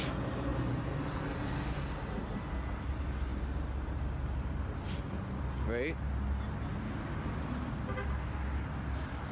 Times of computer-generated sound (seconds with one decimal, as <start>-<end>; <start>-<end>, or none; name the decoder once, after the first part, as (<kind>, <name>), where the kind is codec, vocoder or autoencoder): none